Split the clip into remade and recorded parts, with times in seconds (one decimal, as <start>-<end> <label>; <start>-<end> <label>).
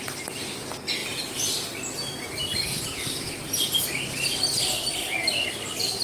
0.0-6.0 recorded